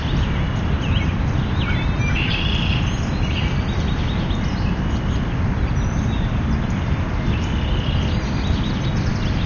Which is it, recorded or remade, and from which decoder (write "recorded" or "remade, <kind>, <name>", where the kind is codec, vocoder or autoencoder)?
recorded